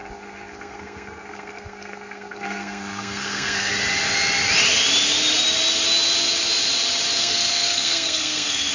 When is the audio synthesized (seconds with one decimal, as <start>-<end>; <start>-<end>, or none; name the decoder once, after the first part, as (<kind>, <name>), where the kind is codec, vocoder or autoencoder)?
0.0-3.7 (codec, SNAC); 7.2-8.7